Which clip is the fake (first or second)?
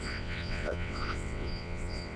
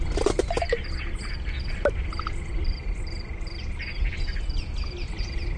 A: first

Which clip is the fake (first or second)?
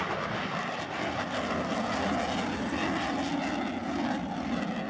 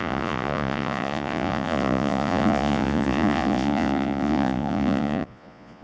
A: second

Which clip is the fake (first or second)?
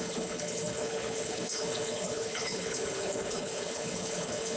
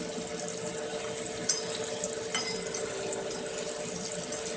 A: first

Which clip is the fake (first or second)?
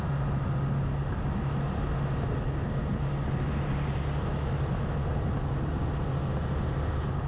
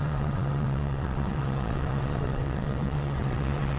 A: second